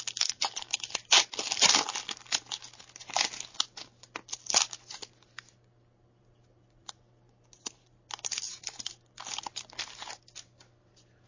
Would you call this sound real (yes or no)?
yes